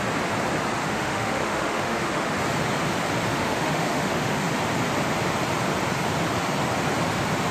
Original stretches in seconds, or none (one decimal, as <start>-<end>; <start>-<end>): 0.0-0.8; 2.3-3.3; 4.5-7.5